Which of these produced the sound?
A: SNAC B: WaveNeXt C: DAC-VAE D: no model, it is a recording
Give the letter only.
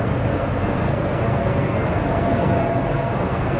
A